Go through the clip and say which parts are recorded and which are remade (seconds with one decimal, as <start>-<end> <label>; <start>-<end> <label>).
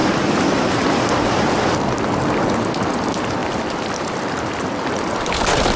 0.0-5.8 remade